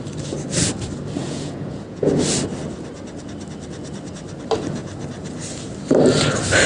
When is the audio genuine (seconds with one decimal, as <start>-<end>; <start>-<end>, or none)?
0.0-1.2; 2.1-6.7